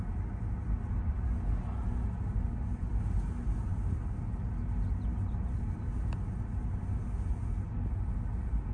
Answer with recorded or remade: recorded